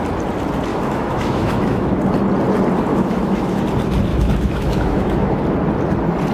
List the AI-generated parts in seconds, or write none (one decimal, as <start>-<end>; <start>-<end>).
0.7-2.0; 2.9-3.6; 4.1-5.4